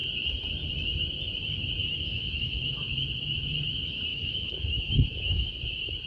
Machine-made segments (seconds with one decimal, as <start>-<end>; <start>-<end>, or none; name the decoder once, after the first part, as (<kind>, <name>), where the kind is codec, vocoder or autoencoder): 1.8-2.8 (autoencoder, DAC-VAE); 4.1-5.5